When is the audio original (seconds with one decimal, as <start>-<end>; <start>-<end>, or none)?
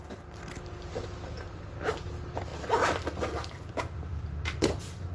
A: 0.0-5.1